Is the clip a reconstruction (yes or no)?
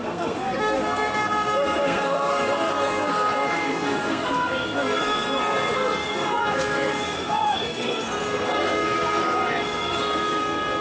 yes